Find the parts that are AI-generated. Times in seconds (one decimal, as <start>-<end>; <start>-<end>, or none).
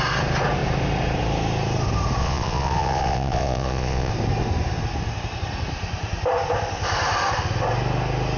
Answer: 2.2-4.1